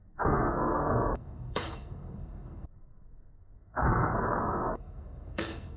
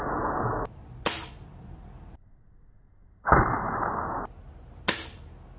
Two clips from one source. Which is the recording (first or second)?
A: second